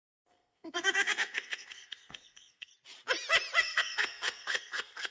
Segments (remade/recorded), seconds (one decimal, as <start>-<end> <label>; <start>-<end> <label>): 0.0-2.7 remade; 2.7-3.6 recorded; 3.6-5.1 remade